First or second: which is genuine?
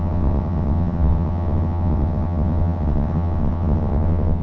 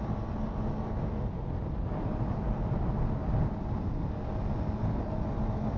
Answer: second